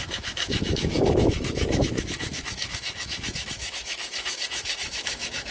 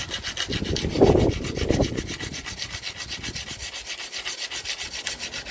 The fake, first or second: first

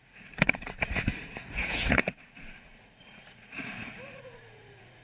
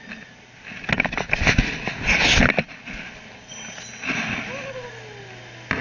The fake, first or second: first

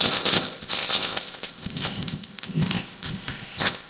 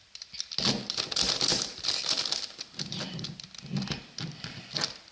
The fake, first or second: first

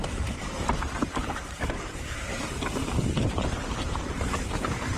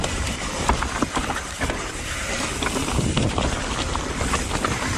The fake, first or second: first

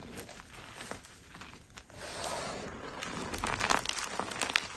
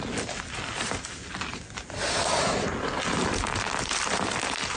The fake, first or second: second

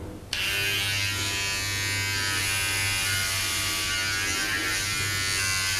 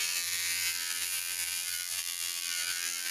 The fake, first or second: second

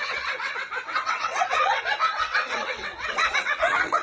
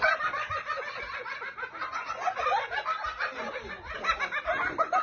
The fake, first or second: first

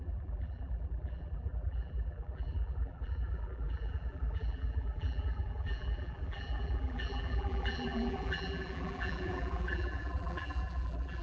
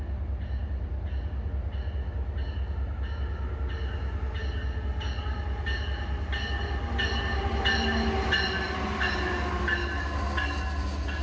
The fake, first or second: first